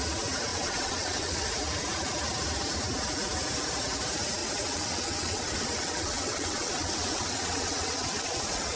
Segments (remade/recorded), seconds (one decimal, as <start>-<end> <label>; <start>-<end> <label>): 0.0-0.5 recorded; 0.5-1.5 remade; 1.5-4.4 recorded; 4.4-8.8 remade